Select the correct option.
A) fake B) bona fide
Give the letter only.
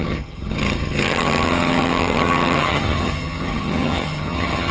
A